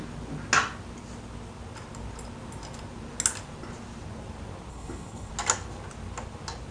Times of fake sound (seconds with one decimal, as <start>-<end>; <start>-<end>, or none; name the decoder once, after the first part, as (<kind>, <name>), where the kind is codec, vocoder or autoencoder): 4.7-5.3 (codec, HILCodec)